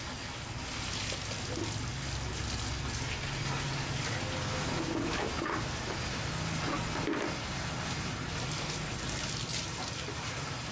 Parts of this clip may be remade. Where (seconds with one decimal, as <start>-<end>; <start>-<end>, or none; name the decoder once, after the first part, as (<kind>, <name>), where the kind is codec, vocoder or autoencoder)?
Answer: none